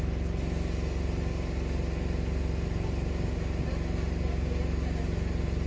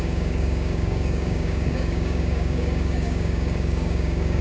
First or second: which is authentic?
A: first